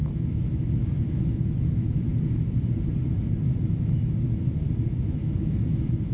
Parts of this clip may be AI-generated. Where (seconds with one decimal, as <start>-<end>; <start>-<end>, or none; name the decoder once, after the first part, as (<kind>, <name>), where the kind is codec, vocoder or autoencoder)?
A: 0.0-2.1 (autoencoder, DAC-VAE); 3.6-4.0; 4.9-6.1